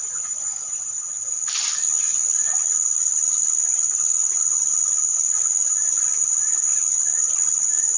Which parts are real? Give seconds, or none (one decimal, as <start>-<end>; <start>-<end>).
0.0-8.0

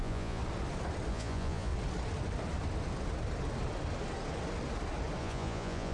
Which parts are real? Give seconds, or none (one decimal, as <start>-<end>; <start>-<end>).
0.4-1.1; 1.7-5.2

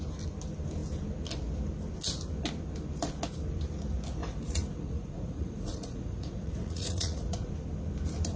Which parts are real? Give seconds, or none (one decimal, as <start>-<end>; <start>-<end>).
0.0-4.2; 7.5-8.4

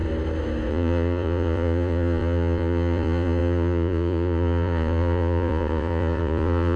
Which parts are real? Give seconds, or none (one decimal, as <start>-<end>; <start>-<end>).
0.0-0.7

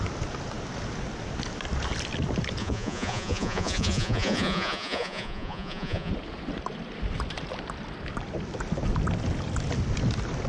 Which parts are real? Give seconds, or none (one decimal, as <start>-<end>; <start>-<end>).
0.0-2.6; 6.1-10.5